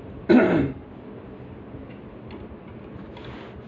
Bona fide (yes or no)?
yes